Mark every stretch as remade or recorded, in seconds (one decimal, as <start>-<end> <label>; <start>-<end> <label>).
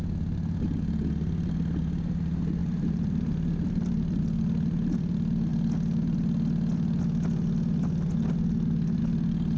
0.0-2.6 recorded; 2.6-4.2 remade; 4.2-9.6 recorded